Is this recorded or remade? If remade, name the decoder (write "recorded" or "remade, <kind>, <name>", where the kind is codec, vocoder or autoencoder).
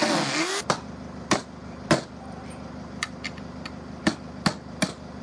recorded